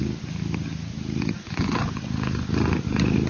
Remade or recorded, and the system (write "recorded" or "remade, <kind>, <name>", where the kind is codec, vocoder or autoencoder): recorded